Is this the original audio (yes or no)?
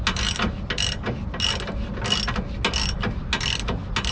yes